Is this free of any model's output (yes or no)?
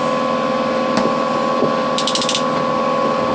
yes